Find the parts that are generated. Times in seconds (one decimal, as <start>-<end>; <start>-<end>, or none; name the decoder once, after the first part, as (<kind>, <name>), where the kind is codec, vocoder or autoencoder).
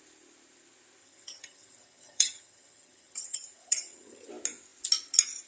1.0-4.3 (vocoder, HiFi-GAN)